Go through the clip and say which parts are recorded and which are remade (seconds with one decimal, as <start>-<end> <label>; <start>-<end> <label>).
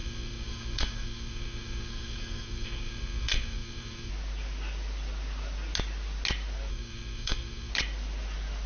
0.0-4.1 remade; 4.1-6.7 recorded; 6.7-7.7 remade; 7.7-8.7 recorded